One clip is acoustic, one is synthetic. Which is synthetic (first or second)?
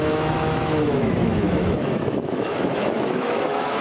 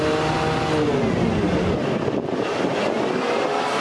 first